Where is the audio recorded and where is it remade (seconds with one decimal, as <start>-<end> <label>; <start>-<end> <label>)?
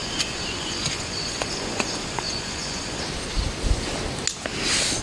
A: 0.0-3.0 remade; 3.0-5.0 recorded